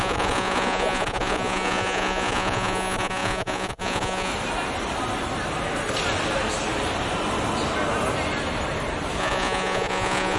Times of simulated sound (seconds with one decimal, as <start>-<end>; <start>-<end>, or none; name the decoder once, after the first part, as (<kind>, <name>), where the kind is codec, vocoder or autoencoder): 0.0-4.3 (vocoder, Vocos); 9.2-10.4